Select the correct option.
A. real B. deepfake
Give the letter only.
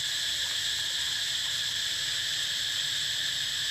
A